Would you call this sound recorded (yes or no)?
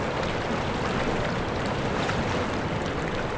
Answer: yes